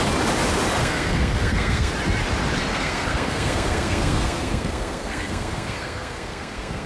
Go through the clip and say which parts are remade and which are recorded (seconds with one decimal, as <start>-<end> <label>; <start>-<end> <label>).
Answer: 0.0-0.8 recorded; 0.8-1.9 remade; 1.9-2.7 recorded; 2.7-6.9 remade